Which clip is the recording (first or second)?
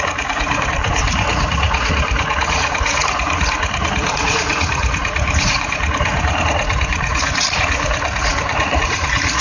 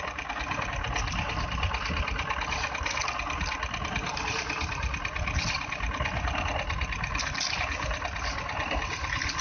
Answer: second